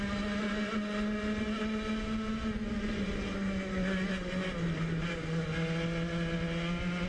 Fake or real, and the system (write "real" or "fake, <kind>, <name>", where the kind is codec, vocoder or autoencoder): real